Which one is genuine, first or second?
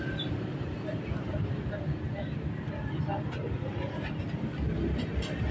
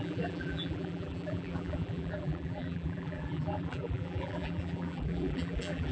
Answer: first